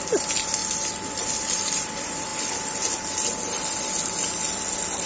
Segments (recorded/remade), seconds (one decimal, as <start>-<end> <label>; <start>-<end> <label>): 0.0-0.6 remade; 0.6-1.1 recorded; 1.1-2.3 remade; 2.3-5.1 recorded